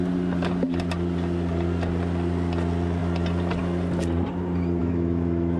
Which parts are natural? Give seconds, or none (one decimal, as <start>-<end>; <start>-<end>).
0.0-4.8